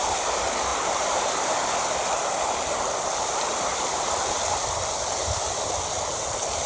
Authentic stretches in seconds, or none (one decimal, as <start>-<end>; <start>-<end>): 0.0-0.7; 4.7-6.7